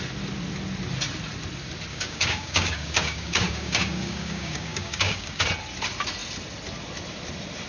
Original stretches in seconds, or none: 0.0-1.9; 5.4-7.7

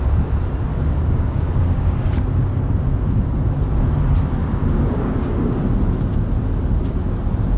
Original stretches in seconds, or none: 0.0-0.7; 2.2-4.4; 5.6-7.6